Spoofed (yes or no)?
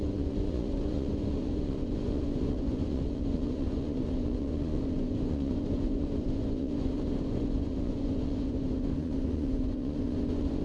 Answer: yes